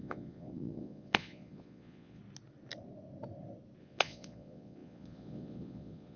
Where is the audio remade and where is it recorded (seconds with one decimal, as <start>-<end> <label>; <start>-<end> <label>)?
0.0-2.2 remade; 2.2-3.8 recorded; 3.8-6.2 remade